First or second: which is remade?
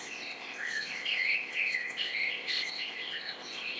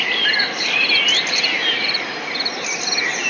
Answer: first